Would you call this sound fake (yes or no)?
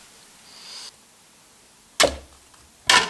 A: no